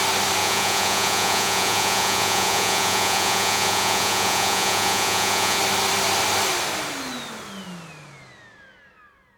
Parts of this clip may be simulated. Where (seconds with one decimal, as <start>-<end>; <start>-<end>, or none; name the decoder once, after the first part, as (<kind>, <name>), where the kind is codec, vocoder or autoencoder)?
0.4-5.6 (vocoder, Vocos)